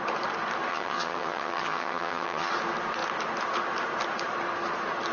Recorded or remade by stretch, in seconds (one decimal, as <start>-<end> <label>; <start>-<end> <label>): 0.0-0.7 recorded; 0.7-2.5 remade; 2.5-5.1 recorded